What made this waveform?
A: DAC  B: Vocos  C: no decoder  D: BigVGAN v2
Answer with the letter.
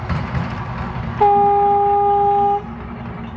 C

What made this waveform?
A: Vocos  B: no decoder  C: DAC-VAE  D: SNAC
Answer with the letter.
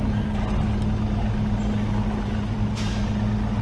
B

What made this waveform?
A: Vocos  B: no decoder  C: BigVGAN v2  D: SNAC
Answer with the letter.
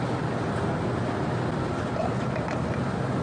B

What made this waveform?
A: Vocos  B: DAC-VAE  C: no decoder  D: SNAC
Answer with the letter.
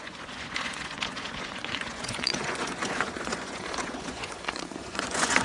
A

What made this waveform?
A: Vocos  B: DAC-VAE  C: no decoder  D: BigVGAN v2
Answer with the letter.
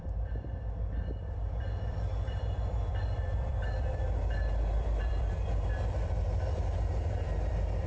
D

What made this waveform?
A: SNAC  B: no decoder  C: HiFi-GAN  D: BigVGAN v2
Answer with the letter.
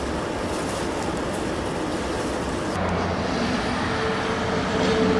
B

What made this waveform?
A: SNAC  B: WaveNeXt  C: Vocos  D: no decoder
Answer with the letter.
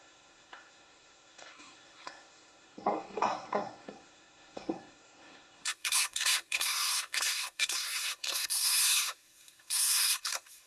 A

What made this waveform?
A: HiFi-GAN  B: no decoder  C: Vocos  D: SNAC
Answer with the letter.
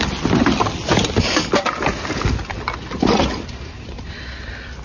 B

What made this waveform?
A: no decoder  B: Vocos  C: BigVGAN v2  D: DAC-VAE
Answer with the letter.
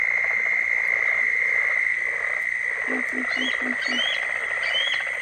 A